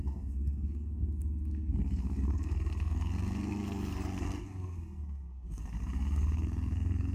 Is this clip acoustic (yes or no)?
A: no